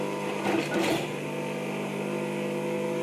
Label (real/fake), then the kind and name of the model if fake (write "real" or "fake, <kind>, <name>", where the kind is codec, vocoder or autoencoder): real